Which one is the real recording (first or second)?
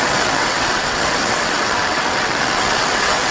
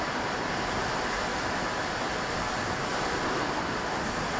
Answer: second